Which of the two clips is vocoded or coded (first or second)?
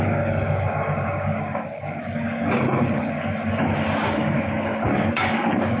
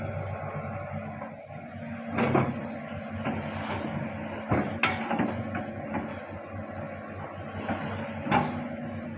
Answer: first